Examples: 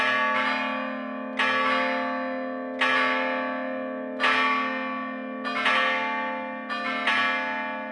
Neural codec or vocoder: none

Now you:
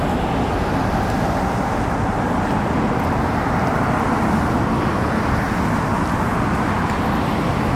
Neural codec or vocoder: none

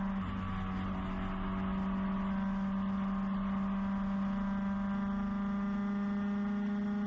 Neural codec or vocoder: none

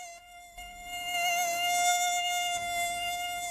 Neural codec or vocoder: autoencoder, DAC-VAE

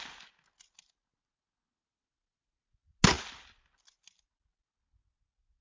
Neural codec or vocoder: none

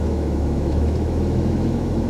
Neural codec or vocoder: autoencoder, DAC-VAE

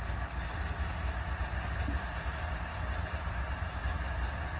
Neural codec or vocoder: none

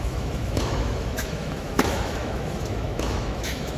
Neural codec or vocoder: autoencoder, DAC-VAE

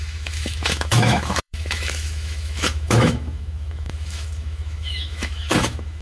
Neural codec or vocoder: autoencoder, DAC-VAE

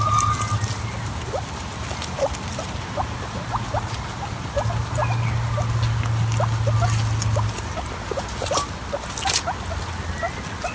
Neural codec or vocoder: none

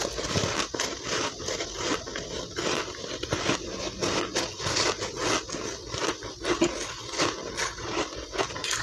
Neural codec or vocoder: none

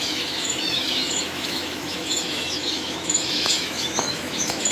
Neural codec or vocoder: autoencoder, DAC-VAE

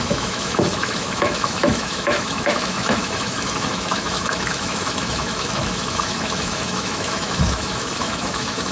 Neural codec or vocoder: autoencoder, DAC-VAE